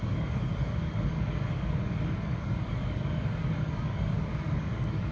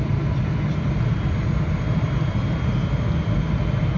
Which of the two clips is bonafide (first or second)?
second